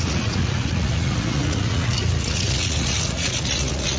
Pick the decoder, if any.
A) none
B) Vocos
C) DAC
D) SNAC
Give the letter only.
B